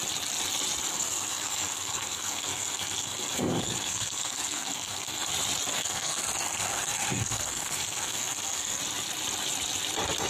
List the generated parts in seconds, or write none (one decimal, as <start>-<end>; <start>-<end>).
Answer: 0.9-5.3; 5.7-8.8